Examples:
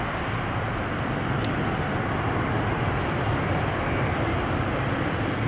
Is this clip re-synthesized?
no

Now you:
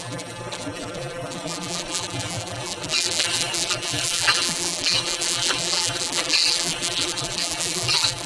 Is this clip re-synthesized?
yes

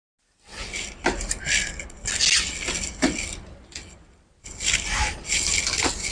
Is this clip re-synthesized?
no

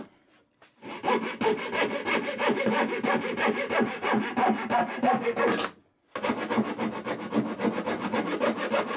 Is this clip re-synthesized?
no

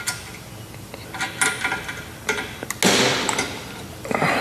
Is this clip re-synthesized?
no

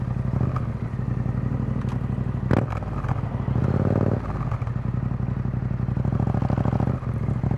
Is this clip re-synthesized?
no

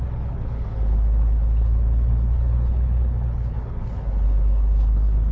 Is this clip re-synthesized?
yes